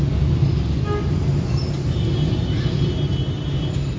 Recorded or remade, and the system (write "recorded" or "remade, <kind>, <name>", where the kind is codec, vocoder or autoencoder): recorded